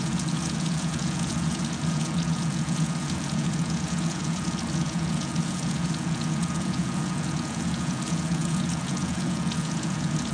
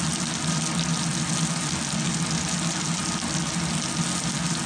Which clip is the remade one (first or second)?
first